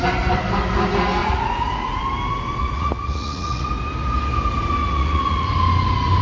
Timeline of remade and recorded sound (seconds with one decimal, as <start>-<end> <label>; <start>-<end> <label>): 0.0-1.2 recorded; 1.2-2.0 remade; 2.0-2.6 recorded; 2.6-3.7 remade; 3.7-4.8 recorded; 4.8-5.5 remade; 5.5-6.2 recorded